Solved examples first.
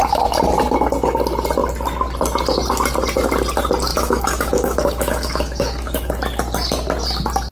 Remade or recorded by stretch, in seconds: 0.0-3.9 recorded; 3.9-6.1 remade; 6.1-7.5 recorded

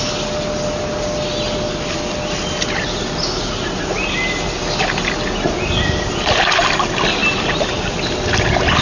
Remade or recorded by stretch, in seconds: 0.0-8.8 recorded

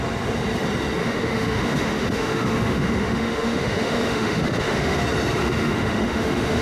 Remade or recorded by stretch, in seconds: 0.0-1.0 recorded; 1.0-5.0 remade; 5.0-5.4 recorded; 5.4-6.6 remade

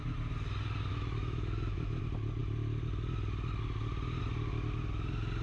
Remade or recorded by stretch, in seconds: 0.0-0.9 recorded; 0.9-2.0 remade; 2.0-5.4 recorded

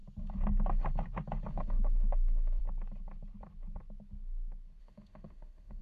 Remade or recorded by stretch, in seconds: 0.0-1.5 recorded; 1.5-2.6 remade; 2.6-4.8 recorded; 4.8-5.8 remade